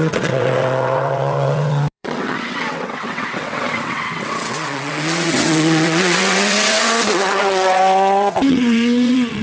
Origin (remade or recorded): remade